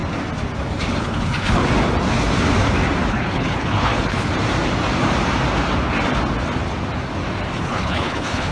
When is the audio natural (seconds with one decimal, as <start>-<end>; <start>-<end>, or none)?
0.0-1.0; 1.6-3.1; 4.3-7.6